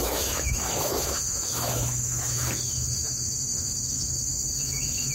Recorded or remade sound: remade